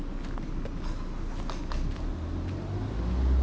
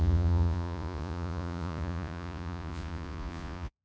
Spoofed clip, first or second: second